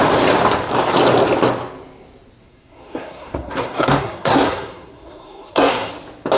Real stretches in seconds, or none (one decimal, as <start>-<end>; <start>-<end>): 0.0-2.4; 5.9-6.4